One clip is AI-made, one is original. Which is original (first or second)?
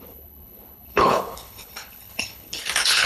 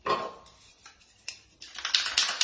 second